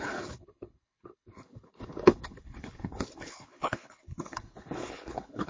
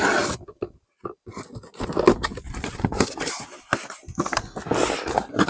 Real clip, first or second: second